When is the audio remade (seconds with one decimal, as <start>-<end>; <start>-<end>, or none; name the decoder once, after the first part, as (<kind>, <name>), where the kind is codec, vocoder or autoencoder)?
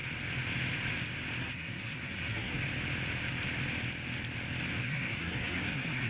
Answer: 1.4-2.6 (codec, SNAC); 4.8-6.1